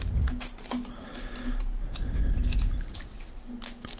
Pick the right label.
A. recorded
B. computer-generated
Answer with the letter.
A